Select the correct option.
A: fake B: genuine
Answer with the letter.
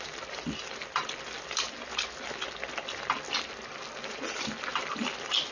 B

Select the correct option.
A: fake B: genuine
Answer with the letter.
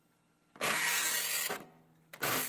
B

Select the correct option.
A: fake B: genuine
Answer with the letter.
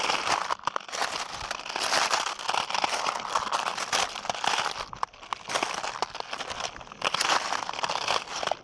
B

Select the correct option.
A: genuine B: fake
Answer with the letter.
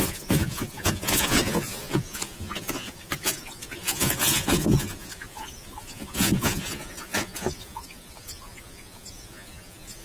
B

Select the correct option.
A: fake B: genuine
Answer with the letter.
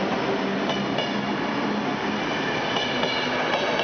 B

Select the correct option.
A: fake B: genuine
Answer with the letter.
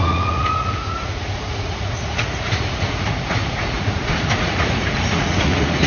A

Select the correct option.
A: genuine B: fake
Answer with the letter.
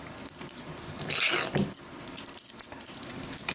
A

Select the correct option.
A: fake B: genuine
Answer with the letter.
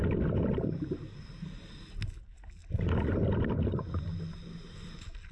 B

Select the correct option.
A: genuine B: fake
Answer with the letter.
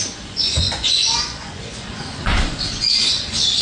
B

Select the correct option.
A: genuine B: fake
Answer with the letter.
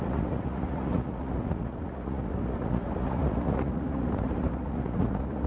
B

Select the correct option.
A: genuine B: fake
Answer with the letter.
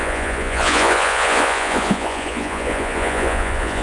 B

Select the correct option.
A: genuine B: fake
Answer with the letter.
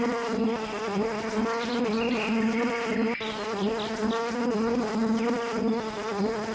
A